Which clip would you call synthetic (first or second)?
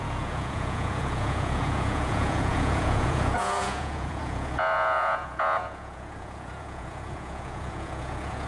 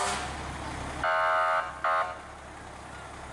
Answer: first